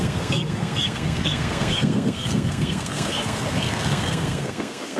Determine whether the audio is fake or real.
fake